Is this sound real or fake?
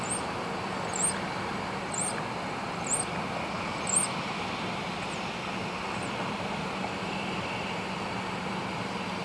fake